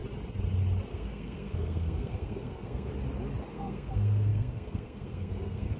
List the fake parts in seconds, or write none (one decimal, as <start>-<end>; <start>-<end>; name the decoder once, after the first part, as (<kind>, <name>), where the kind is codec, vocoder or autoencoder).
0.9-2.9 (codec, SNAC); 3.5-5.8